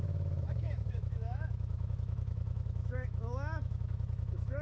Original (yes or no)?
no